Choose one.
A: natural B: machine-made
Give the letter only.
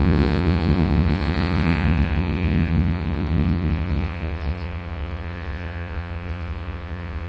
B